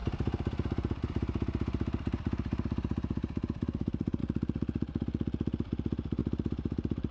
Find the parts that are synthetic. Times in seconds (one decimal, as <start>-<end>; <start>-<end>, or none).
0.0-4.2; 6.2-7.1